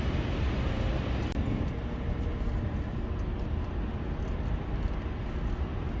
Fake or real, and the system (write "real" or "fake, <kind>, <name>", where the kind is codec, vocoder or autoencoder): real